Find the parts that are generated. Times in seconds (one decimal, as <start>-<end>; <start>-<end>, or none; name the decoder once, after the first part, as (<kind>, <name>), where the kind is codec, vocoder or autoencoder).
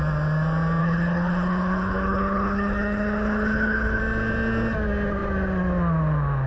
0.8-4.0 (codec, HILCodec)